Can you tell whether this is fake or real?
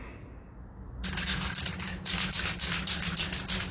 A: real